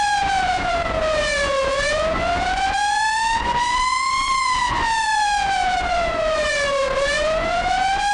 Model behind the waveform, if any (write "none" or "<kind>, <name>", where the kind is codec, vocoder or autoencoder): vocoder, Vocos